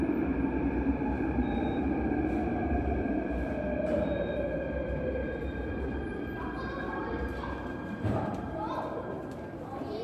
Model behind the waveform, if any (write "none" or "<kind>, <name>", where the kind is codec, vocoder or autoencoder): vocoder, BigVGAN v2